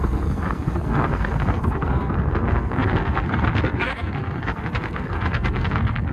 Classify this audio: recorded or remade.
remade